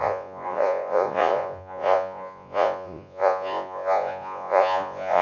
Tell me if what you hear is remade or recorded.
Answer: remade